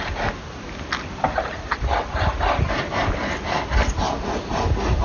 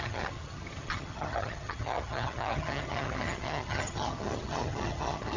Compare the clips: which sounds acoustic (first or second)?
first